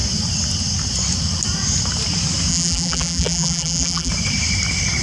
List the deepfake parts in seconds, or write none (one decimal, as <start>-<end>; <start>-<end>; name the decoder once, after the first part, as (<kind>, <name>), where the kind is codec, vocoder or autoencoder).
2.5-4.1 (vocoder, BigVGAN v2)